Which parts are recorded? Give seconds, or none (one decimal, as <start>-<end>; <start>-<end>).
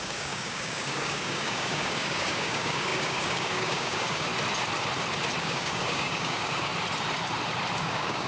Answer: 4.3-5.4; 6.7-7.8